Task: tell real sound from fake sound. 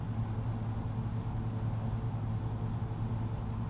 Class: real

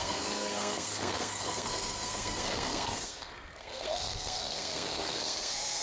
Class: fake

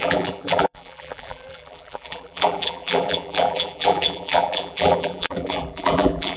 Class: fake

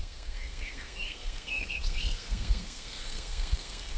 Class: fake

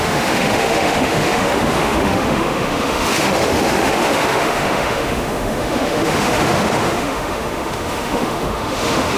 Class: fake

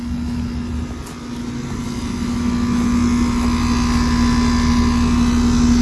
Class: real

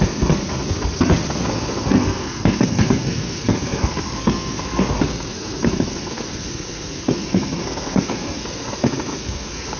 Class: fake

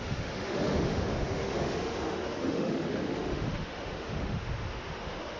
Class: fake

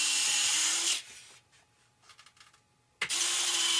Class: real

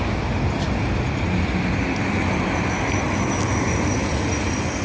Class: real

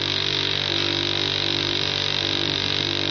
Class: real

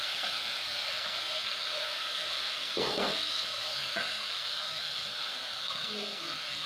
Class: fake